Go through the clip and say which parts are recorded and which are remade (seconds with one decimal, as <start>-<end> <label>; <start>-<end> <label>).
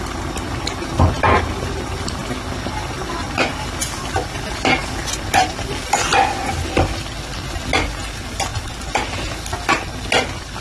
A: 0.0-10.6 recorded